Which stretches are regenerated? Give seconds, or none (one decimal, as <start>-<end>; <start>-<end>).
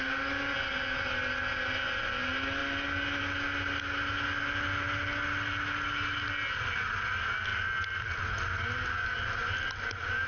none